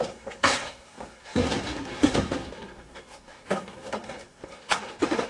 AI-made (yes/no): yes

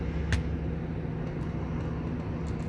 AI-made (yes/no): no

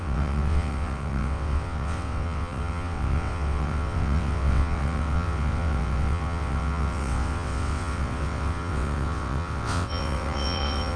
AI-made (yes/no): yes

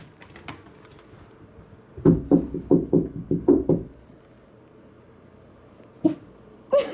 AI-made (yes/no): no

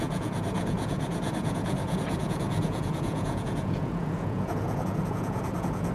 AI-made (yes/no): yes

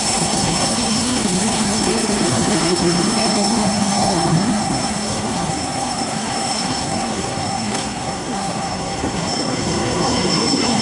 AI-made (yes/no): yes